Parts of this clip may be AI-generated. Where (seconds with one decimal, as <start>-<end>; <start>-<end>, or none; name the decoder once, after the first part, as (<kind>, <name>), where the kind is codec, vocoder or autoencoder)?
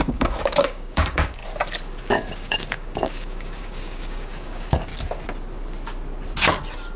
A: 0.0-1.4 (codec, DAC); 2.0-4.9